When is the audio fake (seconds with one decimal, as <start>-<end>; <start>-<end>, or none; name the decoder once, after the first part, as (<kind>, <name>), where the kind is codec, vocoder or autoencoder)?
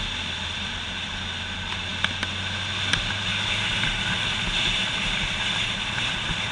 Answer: none